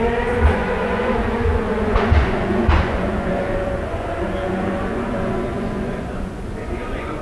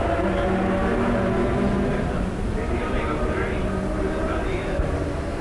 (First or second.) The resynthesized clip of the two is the first